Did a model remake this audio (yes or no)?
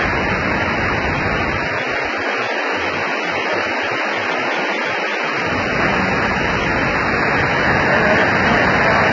no